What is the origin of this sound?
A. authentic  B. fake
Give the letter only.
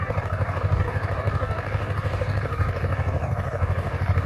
B